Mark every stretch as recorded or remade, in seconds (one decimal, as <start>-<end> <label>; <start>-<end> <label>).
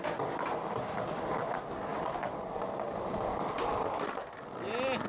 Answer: 0.0-1.9 recorded; 1.9-2.5 remade; 2.5-5.1 recorded